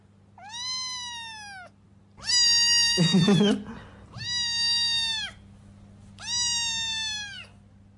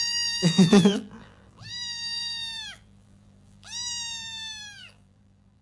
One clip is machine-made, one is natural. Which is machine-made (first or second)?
second